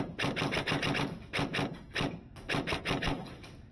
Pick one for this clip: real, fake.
real